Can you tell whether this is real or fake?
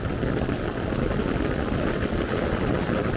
real